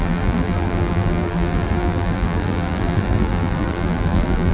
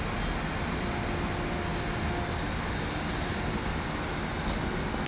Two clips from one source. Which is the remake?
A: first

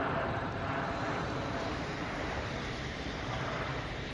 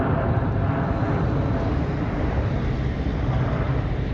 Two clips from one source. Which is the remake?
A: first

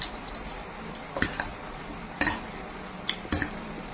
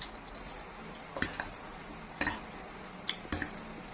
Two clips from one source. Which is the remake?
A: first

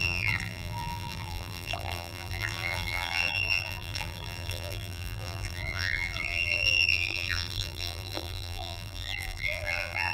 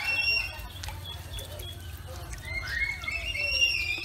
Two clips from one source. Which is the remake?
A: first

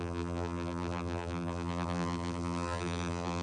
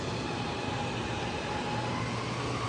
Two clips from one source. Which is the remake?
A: first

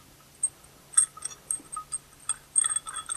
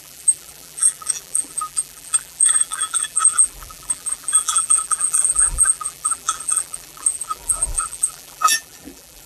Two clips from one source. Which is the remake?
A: second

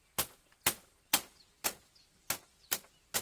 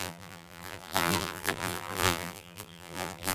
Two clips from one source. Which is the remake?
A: second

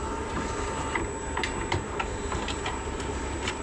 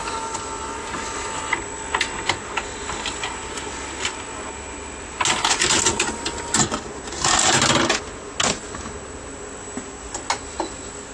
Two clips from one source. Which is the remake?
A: first